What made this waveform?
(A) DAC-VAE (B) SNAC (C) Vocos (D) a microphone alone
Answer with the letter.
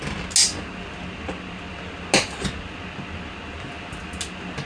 D